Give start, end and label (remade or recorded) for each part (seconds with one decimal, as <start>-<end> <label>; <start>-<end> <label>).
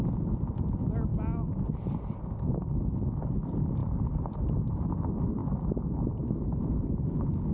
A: 0.0-7.5 recorded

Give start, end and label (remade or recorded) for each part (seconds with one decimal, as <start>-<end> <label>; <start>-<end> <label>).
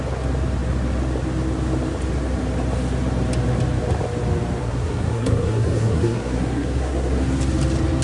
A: 0.0-4.6 recorded; 4.6-7.2 remade; 7.2-8.0 recorded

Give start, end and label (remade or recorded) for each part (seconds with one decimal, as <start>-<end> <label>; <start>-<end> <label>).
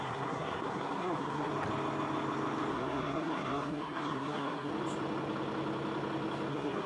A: 0.0-1.5 remade; 1.5-2.7 recorded; 2.7-4.7 remade; 4.7-6.5 recorded; 6.5-6.9 remade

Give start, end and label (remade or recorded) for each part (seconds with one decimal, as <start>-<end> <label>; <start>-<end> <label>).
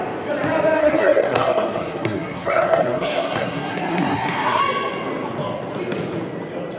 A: 0.0-0.8 recorded; 0.8-4.6 remade; 4.6-6.8 recorded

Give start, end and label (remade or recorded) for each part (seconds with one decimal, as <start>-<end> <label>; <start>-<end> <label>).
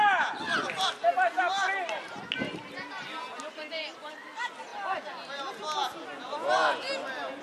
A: 0.0-7.4 recorded